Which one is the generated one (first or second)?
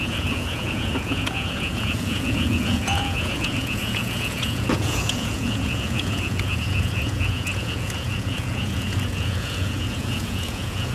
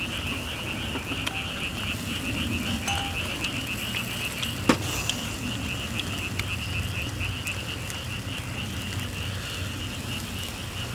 first